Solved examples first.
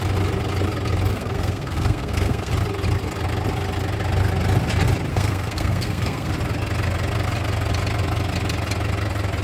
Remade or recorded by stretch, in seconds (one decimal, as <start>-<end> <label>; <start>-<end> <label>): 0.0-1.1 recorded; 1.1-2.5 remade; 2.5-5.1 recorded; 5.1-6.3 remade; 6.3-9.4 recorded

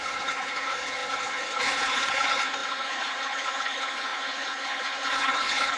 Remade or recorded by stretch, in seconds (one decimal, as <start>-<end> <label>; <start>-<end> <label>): 0.0-5.8 remade

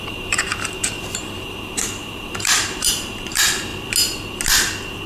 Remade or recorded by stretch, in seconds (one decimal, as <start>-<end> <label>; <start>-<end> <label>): 0.0-3.7 remade; 3.7-5.1 recorded

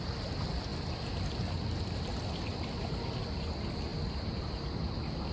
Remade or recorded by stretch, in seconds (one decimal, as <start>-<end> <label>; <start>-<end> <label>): 0.0-5.3 recorded